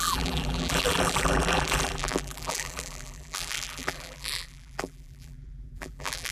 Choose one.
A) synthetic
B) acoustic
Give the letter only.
A